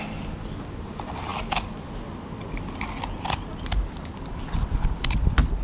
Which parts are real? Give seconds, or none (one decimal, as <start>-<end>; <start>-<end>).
0.0-5.6